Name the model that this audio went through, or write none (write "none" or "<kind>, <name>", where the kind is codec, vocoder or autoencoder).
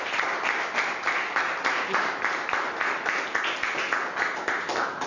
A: none